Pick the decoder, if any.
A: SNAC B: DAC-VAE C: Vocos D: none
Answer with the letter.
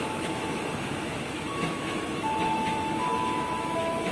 B